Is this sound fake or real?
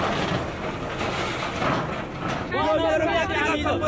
real